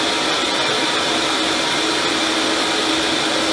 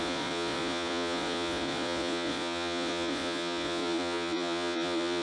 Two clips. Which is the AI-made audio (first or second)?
second